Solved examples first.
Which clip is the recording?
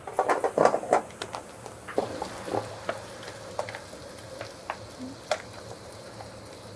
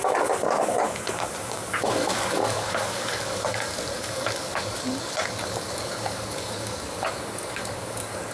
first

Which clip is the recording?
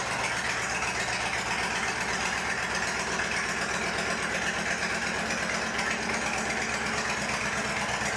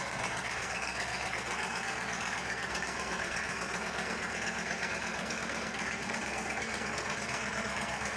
first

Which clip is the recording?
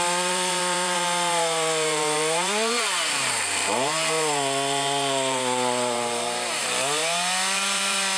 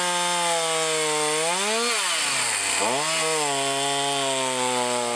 second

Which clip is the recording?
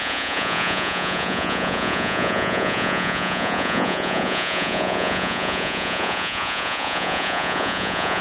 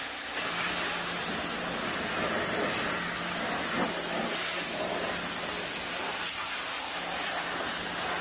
second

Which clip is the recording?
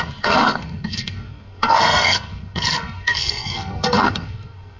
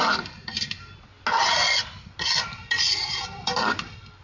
second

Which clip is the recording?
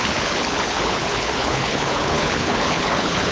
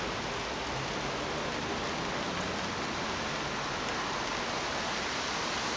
second